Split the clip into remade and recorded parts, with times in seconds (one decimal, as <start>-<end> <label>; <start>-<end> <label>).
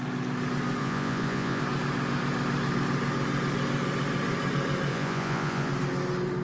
0.0-0.8 recorded; 0.8-1.6 remade; 1.6-4.9 recorded; 4.9-5.7 remade; 5.7-6.4 recorded